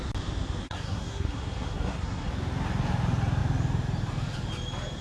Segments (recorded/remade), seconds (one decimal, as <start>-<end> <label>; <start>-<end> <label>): 0.0-0.6 recorded; 0.6-2.3 remade; 2.3-5.0 recorded